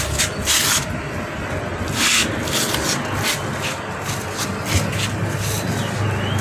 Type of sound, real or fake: real